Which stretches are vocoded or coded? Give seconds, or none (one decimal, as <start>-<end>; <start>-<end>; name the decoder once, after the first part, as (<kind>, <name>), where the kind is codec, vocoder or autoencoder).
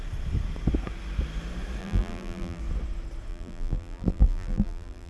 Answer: 1.8-2.6 (vocoder, BigVGAN v2); 3.3-5.1